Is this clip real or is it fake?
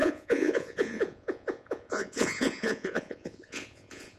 fake